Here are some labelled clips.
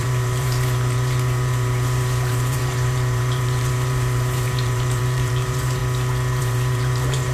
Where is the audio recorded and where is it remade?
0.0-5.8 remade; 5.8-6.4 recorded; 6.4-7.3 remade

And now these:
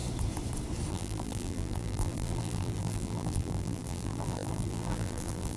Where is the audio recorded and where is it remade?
0.0-0.9 recorded; 0.9-5.6 remade

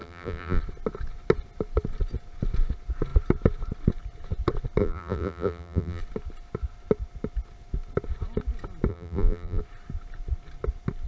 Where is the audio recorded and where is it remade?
0.0-0.6 remade; 0.6-4.8 recorded; 4.8-6.0 remade; 6.0-8.9 recorded; 8.9-9.6 remade; 9.6-11.1 recorded

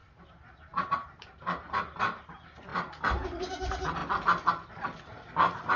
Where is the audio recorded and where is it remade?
0.0-1.8 remade; 1.8-5.8 recorded